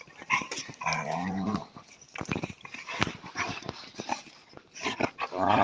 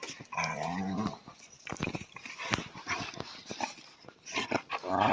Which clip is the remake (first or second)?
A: first